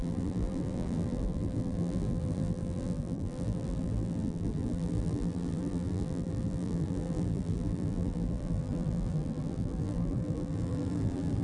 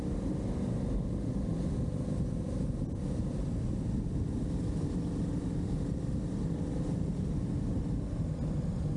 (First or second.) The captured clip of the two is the second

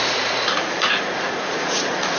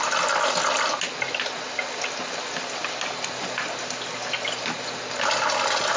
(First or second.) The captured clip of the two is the second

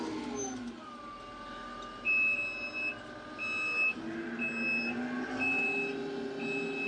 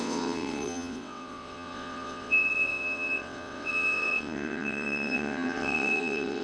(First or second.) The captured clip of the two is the first